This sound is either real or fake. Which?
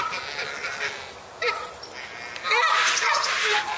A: real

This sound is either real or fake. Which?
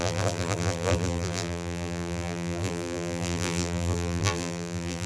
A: fake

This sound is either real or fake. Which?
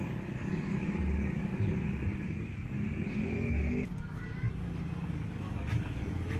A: fake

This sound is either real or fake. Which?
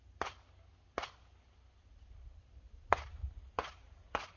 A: real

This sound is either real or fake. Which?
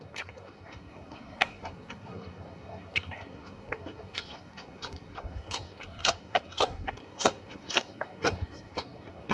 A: fake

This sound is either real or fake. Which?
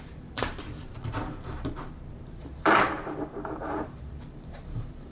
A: fake